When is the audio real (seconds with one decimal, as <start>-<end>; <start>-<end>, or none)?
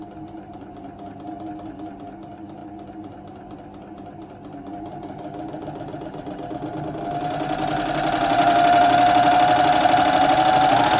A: 0.0-11.0